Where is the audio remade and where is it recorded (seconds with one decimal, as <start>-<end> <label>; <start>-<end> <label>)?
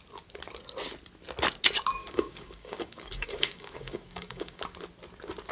0.0-2.0 recorded; 2.0-4.6 remade; 4.6-5.5 recorded